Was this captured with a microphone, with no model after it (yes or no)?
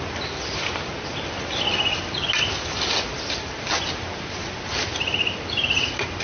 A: yes